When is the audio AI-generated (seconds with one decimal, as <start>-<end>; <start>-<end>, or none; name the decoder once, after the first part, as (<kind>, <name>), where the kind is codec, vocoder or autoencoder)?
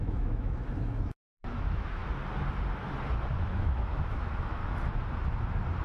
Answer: 0.0-2.0 (autoencoder, DAC-VAE); 3.4-4.6